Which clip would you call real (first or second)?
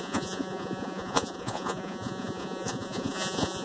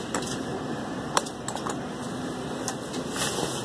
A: second